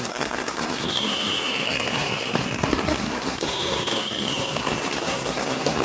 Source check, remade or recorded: remade